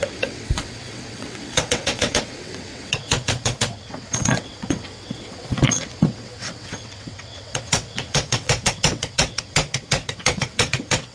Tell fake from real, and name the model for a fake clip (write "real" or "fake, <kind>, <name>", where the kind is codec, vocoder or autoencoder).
fake, vocoder, WaveNeXt